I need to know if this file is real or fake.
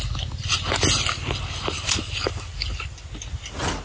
real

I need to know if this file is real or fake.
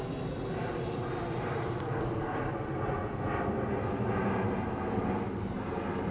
real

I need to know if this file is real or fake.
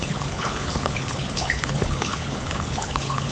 fake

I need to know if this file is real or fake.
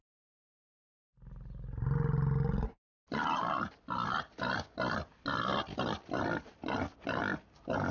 real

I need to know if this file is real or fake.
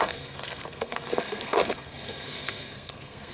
fake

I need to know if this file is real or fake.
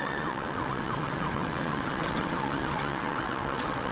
fake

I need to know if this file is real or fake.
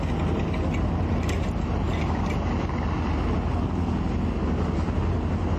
real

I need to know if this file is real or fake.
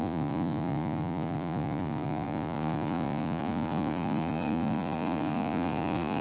fake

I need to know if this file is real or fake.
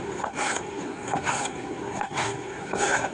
fake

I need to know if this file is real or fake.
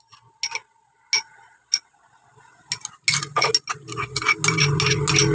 real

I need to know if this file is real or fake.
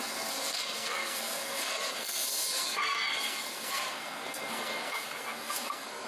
fake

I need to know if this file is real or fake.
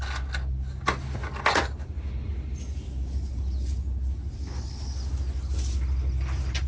real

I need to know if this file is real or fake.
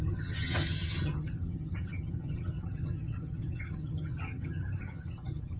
fake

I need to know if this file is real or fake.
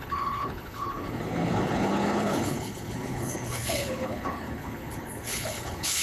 fake